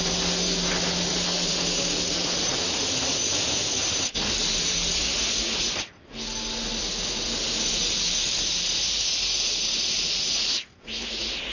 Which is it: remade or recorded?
recorded